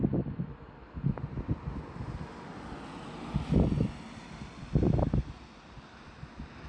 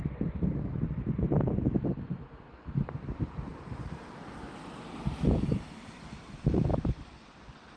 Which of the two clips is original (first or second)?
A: first